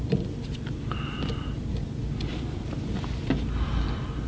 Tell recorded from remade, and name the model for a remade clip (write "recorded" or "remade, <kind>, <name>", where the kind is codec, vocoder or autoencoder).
recorded